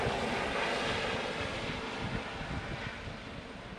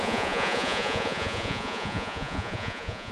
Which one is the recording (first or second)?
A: first